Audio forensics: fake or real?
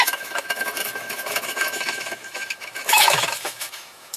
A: fake